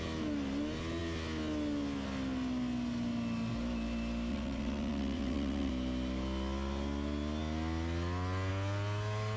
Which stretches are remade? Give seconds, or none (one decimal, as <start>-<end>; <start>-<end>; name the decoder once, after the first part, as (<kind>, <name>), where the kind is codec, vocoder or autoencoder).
4.3-5.7 (vocoder, WaveNeXt)